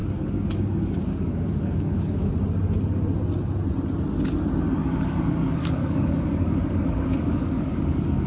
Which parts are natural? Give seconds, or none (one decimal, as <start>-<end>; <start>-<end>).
2.3-4.8